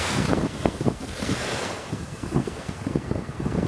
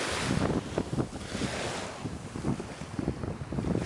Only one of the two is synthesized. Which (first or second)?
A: first